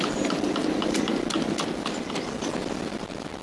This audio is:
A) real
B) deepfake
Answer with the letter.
A